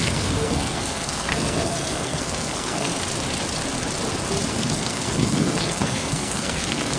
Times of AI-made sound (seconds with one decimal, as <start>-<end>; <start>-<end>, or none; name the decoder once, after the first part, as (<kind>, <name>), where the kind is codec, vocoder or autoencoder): 0.0-2.9 (codec, SNAC); 4.5-7.0